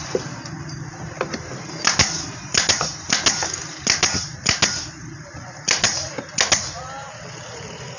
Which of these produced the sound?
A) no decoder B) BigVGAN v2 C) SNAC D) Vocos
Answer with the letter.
A